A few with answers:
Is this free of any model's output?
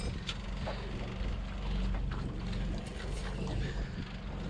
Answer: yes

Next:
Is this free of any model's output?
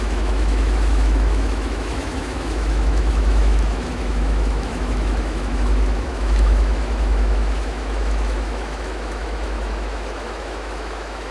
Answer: no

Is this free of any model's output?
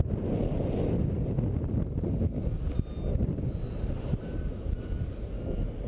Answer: yes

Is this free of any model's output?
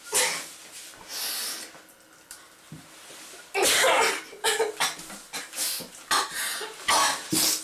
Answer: yes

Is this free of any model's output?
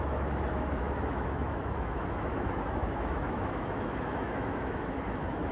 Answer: no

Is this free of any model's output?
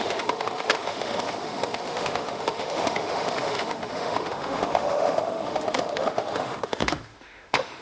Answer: no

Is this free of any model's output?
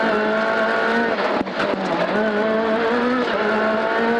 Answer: yes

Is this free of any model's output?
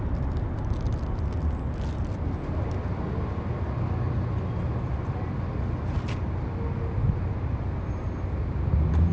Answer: yes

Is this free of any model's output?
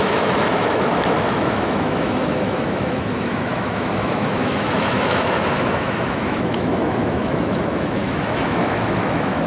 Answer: no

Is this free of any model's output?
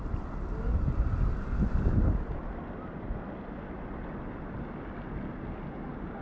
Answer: yes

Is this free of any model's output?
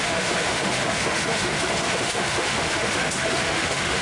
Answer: no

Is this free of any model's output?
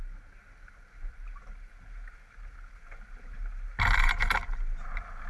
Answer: yes